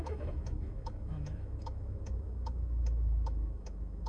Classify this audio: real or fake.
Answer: fake